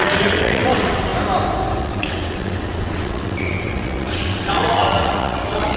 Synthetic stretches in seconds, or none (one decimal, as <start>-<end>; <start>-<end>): 0.0-1.1; 1.8-5.8